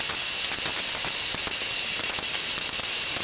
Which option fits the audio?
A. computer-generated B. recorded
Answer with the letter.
A